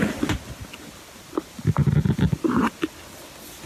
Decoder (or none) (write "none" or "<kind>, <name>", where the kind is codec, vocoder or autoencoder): none